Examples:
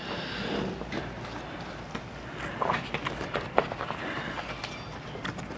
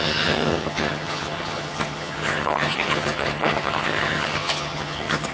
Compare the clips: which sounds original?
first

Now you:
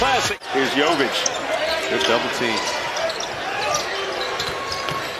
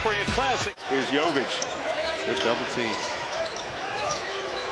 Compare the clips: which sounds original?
first